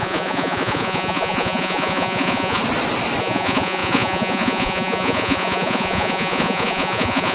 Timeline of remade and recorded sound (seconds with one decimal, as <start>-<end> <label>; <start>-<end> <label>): 0.0-2.6 remade; 2.6-3.2 recorded; 3.2-7.3 remade